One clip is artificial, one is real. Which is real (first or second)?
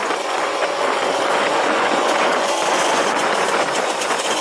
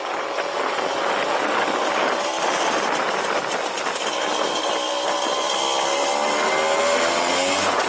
second